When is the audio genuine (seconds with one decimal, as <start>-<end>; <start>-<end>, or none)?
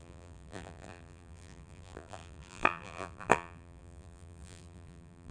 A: none